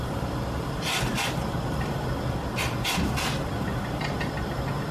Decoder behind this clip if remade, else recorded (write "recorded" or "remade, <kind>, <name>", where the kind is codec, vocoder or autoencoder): recorded